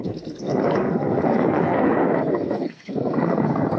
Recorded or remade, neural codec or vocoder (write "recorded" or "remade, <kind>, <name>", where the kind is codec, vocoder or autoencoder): remade, codec, SNAC